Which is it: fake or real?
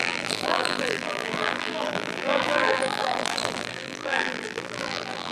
fake